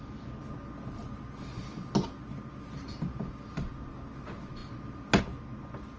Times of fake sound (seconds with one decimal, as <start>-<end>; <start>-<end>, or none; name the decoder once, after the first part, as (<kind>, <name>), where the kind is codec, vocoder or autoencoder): none